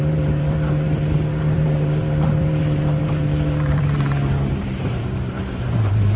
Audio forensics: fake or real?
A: fake